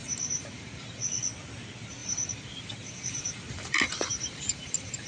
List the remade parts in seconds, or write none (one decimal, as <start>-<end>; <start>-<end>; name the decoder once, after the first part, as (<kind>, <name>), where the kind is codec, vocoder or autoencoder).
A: 0.0-1.0 (vocoder, BigVGAN v2); 2.0-5.1